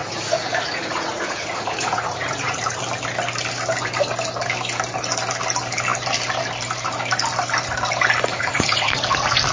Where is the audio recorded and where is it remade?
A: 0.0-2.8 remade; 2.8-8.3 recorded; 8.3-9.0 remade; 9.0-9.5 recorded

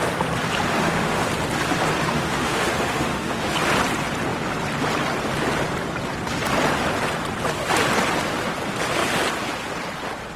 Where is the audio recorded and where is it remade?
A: 0.0-0.7 recorded; 0.7-1.2 remade; 1.2-2.0 recorded; 2.0-3.5 remade; 3.5-10.4 recorded

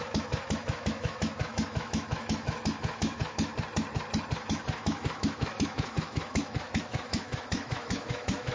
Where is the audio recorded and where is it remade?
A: 0.0-3.5 remade; 3.5-4.3 recorded; 4.3-8.5 remade

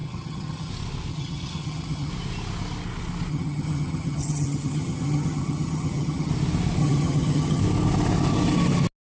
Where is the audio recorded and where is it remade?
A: 0.0-0.7 remade; 0.7-1.1 recorded; 1.1-2.1 remade; 2.1-3.3 recorded; 3.3-6.3 remade; 6.3-6.8 recorded; 6.8-7.6 remade; 7.6-9.1 recorded